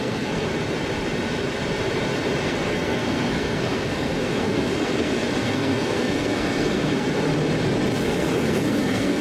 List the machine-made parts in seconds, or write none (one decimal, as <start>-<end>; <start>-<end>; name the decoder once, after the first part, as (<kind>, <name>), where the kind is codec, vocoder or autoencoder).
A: 0.0-0.5 (codec, SNAC); 2.4-7.3; 8.0-9.2

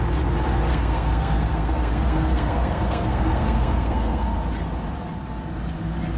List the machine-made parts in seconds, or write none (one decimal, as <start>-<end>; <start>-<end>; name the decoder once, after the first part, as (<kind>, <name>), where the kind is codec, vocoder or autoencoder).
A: 0.7-4.4 (codec, SNAC)

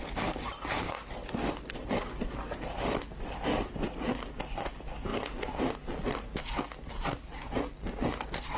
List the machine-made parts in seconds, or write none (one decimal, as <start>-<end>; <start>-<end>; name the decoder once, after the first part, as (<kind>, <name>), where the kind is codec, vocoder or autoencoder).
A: none

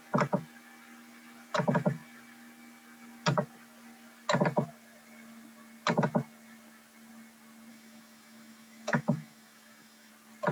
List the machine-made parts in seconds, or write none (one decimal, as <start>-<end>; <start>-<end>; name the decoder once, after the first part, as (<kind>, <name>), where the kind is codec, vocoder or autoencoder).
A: 7.7-10.1 (autoencoder, DAC-VAE)

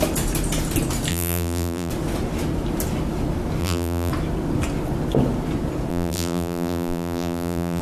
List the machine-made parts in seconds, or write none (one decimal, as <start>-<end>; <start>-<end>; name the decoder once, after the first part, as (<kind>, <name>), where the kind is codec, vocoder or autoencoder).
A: 1.1-1.9 (vocoder, BigVGAN v2); 3.6-4.1; 5.9-7.8

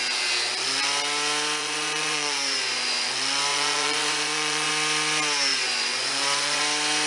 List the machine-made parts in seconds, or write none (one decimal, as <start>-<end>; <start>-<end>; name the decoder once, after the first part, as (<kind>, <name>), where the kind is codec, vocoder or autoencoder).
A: 1.6-3.1 (vocoder, Vocos); 3.5-4.7; 5.5-6.6

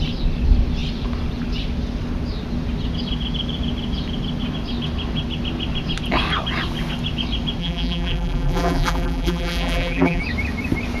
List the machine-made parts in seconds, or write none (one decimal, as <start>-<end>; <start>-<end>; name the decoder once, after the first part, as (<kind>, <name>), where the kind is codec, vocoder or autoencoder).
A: 7.6-10.2 (vocoder, BigVGAN v2)